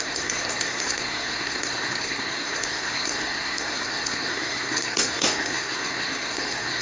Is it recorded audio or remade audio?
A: remade